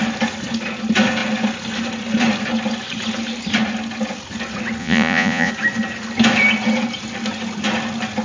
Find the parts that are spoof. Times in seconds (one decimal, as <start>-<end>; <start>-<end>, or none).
4.8-5.5